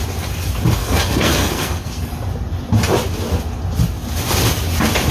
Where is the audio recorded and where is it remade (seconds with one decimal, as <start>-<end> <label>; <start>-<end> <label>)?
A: 0.0-0.8 recorded; 0.8-2.1 remade; 2.1-5.1 recorded